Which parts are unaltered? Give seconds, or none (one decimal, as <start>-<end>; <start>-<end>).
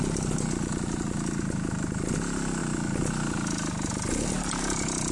0.0-5.1